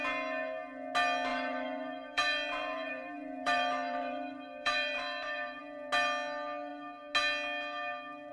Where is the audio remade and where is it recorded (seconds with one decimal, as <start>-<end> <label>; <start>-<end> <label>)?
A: 0.0-1.3 recorded; 1.3-5.6 remade; 5.6-8.3 recorded